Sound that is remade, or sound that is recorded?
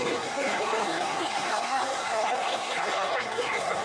remade